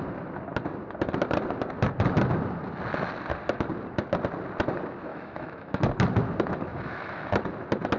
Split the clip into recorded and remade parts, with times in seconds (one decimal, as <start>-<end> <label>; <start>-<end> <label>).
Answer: 0.0-5.1 recorded; 5.1-5.8 remade; 5.8-6.7 recorded; 6.7-7.3 remade; 7.3-8.0 recorded